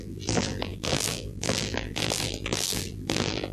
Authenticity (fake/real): fake